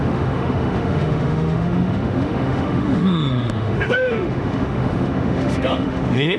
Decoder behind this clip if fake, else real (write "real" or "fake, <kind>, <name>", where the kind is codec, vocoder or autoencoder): fake, autoencoder, DAC-VAE